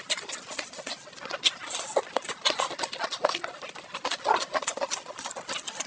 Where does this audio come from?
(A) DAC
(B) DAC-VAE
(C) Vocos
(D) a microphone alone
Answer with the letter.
D